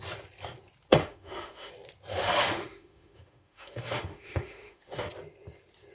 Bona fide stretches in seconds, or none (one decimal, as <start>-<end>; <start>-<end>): 0.0-0.9; 1.7-2.1; 5.1-5.9